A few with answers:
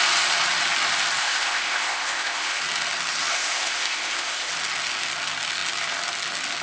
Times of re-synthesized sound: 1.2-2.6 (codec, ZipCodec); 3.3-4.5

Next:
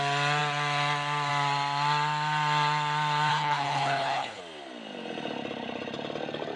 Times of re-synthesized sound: 3.3-4.4 (codec, HILCodec)